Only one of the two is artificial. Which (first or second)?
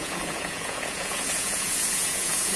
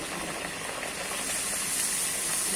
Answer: first